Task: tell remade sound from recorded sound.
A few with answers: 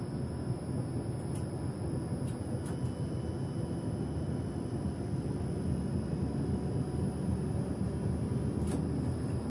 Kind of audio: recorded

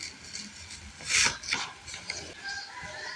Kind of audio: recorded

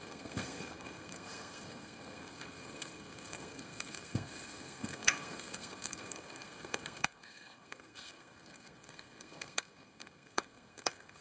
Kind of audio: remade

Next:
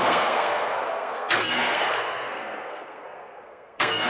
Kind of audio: remade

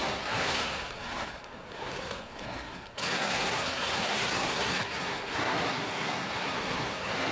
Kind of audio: remade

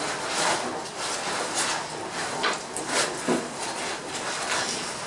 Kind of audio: recorded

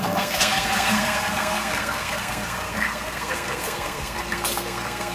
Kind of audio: remade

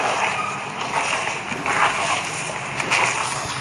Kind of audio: recorded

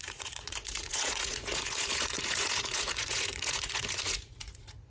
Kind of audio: remade